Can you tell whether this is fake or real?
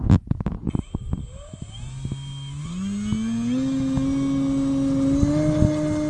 real